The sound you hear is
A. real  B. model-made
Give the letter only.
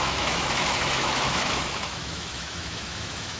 B